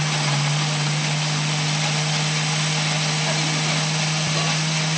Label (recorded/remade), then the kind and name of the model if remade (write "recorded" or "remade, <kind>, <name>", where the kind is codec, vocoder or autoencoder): recorded